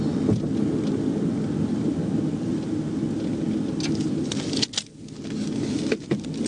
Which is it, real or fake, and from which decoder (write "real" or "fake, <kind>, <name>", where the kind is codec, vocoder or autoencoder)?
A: real